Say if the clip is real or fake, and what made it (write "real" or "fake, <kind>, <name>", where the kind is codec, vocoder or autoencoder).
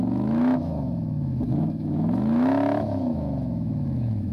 fake, autoencoder, DAC-VAE